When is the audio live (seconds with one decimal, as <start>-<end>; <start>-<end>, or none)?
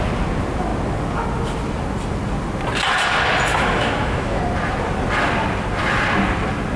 0.0-3.5; 4.4-6.8